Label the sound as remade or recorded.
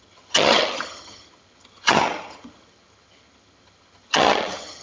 remade